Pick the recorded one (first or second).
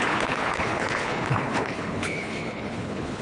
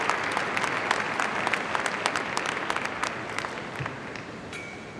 second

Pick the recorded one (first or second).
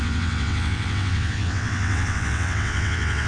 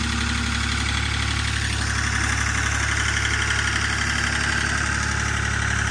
second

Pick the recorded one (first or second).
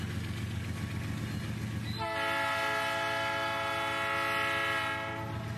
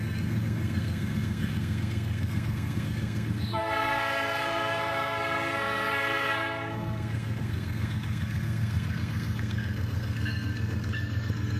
first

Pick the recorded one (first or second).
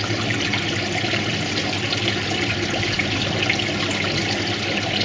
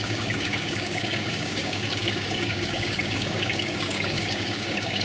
first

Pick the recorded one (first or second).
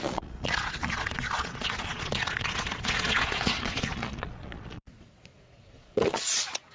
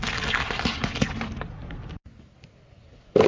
second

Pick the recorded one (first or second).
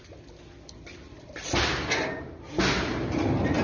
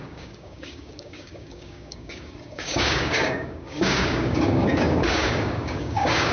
first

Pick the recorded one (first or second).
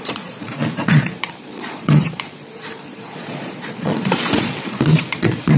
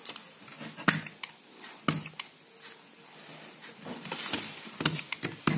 second